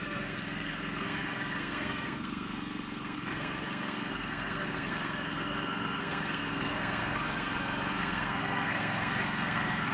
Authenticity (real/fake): fake